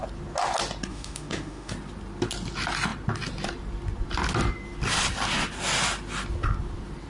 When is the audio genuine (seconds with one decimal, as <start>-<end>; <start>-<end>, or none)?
0.0-0.9; 1.7-7.1